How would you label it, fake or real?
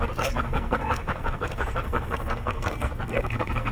fake